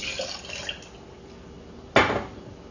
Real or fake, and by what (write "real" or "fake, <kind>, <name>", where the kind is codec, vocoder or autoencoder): real